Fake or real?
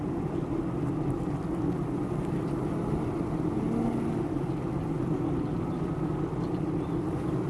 real